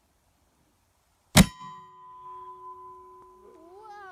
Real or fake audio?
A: real